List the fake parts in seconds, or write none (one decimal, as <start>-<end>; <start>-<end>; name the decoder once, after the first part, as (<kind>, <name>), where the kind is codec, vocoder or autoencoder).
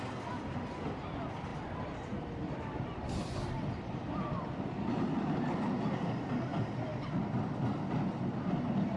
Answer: 1.5-4.9 (vocoder, BigVGAN v2)